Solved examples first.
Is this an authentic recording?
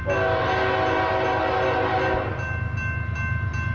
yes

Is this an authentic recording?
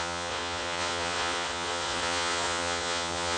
no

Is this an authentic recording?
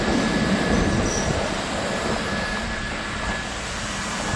yes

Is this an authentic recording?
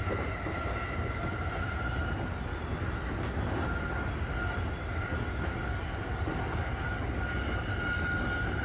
yes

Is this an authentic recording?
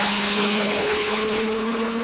no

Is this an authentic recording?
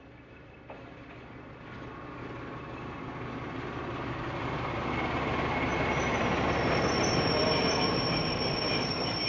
yes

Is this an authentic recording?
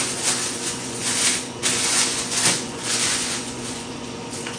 no